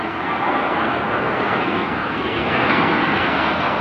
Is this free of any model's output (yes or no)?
no